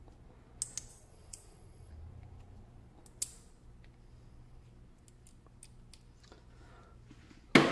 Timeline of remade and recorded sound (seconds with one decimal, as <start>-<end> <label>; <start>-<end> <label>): 0.0-0.9 recorded; 0.9-1.9 remade; 1.9-7.7 recorded